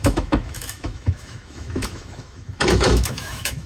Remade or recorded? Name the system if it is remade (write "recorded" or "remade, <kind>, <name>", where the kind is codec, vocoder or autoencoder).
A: remade, autoencoder, DAC-VAE